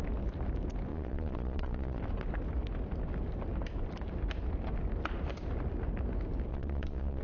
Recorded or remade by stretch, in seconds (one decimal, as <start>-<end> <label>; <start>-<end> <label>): 0.0-0.9 recorded; 0.9-2.0 remade; 2.0-6.5 recorded; 6.5-7.2 remade